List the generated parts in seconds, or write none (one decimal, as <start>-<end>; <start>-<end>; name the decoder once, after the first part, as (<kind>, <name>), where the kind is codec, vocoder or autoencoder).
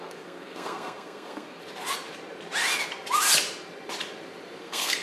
0.0-1.6 (codec, SNAC); 4.6-5.0